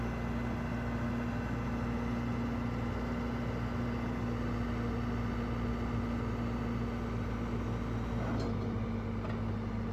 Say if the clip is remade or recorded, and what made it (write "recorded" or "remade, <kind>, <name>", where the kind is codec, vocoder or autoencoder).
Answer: recorded